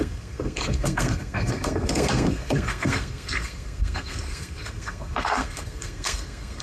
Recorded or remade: remade